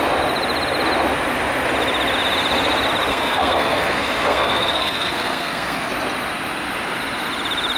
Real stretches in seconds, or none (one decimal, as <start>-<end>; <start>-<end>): 0.0-3.1; 5.9-7.8